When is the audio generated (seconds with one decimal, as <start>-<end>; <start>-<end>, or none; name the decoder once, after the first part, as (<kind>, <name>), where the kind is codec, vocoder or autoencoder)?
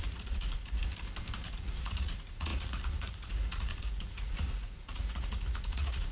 0.0-0.8 (vocoder, Vocos); 1.5-6.1